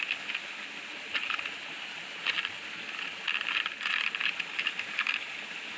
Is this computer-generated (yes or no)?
no